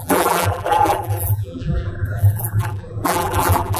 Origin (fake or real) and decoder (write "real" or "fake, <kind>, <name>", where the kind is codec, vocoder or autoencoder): fake, vocoder, BigVGAN v2